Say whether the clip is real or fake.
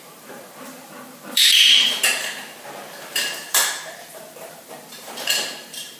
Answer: fake